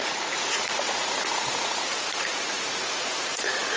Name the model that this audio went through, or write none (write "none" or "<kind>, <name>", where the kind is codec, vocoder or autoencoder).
vocoder, Vocos